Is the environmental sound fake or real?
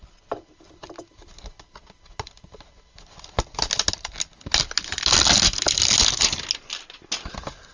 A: real